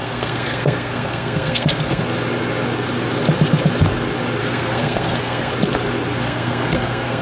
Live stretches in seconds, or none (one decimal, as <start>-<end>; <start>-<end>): 2.0-4.4; 5.5-6.1

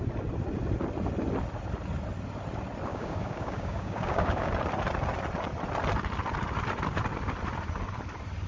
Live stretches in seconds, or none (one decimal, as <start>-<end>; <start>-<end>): 0.0-2.9; 4.5-8.5

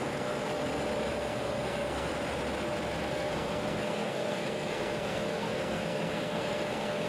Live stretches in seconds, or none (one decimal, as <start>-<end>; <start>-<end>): 0.5-1.1; 2.1-3.1